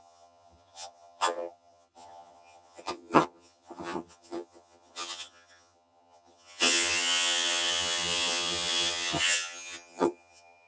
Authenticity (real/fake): fake